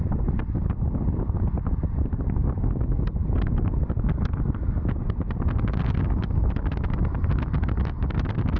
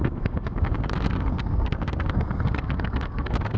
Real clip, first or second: first